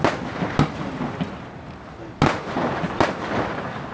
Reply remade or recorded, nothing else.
recorded